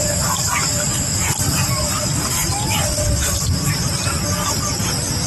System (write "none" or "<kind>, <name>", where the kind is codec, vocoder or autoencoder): none